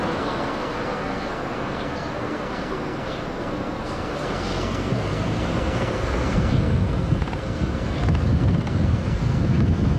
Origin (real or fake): fake